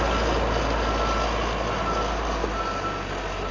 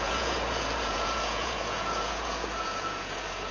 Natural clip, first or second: first